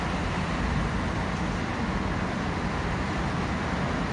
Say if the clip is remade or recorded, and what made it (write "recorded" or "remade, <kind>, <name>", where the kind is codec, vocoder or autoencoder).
recorded